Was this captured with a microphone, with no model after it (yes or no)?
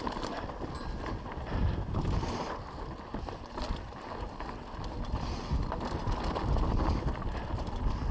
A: yes